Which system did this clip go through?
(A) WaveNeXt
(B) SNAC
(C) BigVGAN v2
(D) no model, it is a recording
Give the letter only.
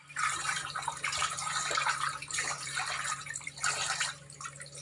C